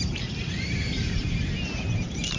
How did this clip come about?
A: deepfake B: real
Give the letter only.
B